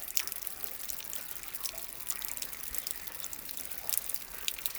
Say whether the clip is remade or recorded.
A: recorded